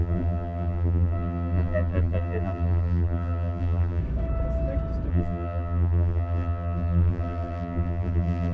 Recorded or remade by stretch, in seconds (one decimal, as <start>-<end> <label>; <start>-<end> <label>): 0.0-4.0 remade; 4.0-5.1 recorded; 5.1-8.5 remade